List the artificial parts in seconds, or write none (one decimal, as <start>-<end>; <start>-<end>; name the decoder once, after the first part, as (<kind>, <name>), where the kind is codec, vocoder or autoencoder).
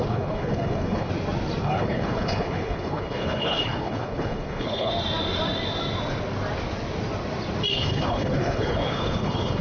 0.0-1.1 (codec, HILCodec); 1.6-4.9; 7.7-9.6